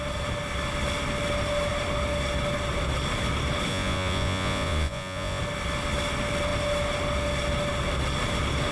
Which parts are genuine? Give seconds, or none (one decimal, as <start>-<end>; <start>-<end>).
0.0-3.7; 5.4-8.7

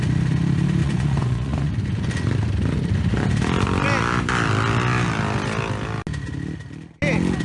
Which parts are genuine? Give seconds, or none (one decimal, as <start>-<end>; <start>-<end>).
0.0-0.8; 1.7-7.4

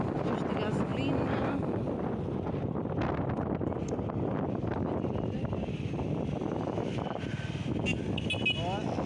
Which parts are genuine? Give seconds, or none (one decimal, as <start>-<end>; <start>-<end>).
0.0-9.1

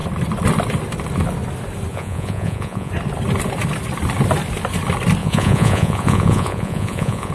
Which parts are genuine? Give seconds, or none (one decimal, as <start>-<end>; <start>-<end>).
0.0-1.9; 2.9-5.2